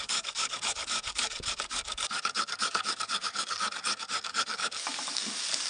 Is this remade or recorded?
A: remade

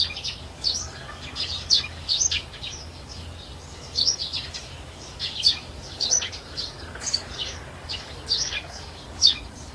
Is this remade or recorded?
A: remade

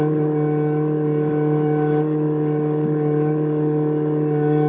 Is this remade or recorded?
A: remade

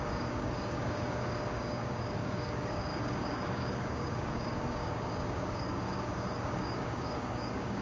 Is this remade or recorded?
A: remade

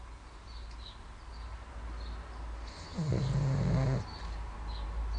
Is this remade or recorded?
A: recorded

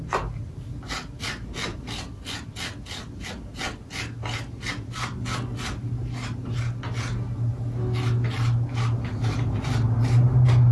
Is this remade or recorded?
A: recorded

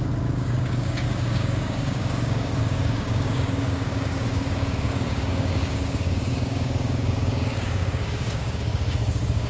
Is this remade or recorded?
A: remade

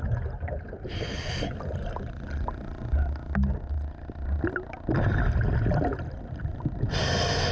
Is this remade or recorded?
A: recorded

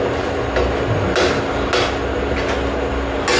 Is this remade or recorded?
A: recorded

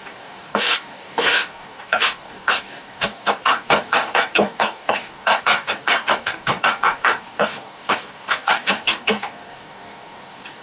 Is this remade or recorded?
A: remade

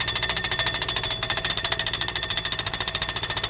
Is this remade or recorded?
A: recorded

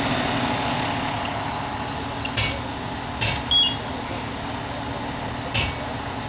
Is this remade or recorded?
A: recorded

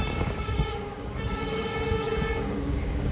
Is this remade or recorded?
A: remade